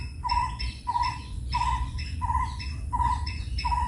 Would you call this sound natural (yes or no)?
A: no